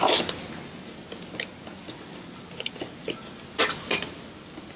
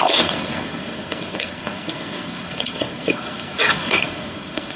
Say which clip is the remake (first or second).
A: second